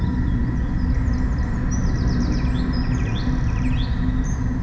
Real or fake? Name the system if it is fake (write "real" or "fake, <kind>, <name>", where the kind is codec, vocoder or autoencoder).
real